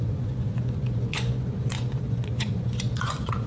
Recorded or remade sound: remade